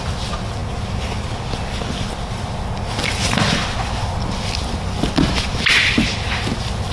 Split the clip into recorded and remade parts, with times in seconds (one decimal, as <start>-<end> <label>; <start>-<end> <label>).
0.0-6.9 recorded